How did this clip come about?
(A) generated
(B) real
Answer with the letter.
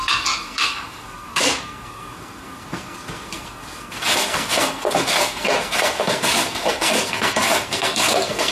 A